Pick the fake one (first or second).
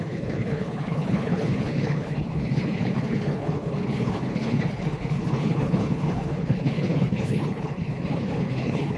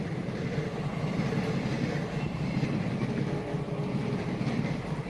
first